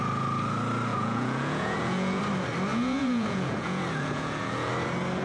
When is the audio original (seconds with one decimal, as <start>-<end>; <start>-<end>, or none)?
0.0-0.9; 2.2-2.7; 4.7-5.2